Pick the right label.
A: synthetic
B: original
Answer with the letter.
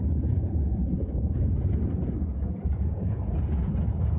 A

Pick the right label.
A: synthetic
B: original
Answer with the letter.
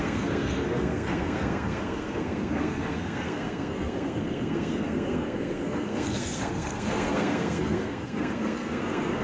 A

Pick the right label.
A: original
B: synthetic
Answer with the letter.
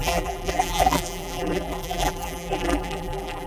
B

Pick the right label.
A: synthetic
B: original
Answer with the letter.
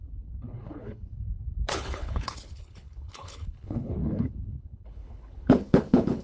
A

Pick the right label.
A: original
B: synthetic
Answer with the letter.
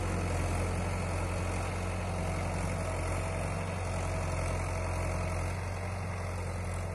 A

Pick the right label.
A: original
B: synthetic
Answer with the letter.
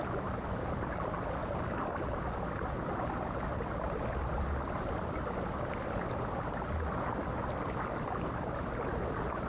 A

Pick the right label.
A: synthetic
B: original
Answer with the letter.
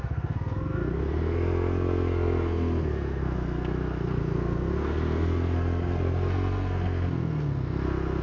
A